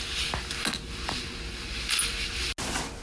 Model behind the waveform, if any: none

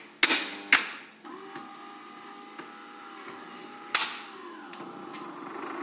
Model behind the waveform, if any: none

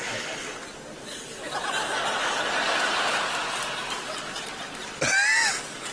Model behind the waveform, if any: none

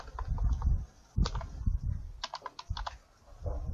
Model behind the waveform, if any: none